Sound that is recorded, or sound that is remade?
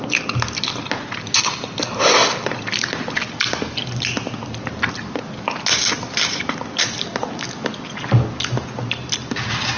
recorded